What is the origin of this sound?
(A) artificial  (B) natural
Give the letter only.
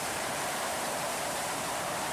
A